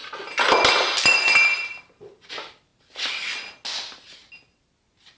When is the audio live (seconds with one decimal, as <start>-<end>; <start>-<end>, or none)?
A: 0.0-5.2